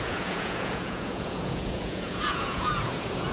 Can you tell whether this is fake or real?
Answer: fake